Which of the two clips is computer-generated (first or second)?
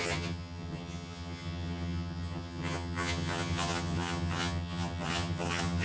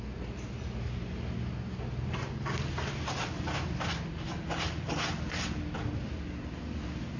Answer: first